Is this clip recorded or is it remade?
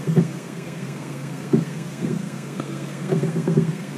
remade